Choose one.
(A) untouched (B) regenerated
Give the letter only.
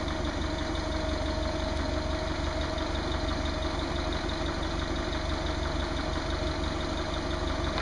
A